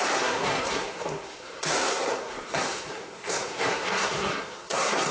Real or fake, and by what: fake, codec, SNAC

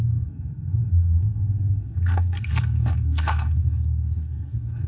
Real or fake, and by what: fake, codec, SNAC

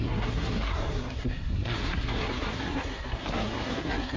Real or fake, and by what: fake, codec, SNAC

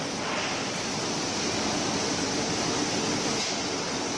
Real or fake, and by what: real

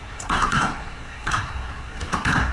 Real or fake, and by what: fake, codec, SNAC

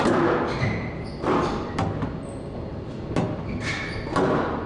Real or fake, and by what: real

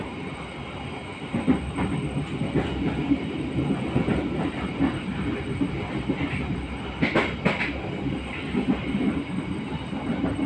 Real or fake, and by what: real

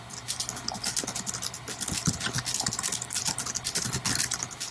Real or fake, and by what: real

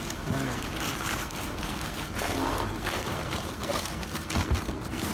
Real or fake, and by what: fake, codec, SNAC